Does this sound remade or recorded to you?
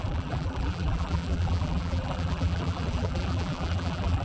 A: remade